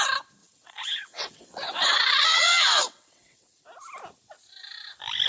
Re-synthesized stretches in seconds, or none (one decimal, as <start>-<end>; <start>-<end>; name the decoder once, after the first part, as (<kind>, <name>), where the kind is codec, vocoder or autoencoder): 0.4-3.6 (vocoder, WaveNeXt)